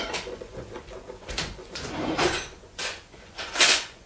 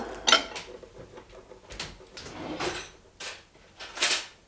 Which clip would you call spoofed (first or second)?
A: first